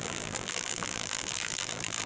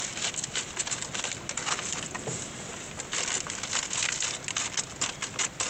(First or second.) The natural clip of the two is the second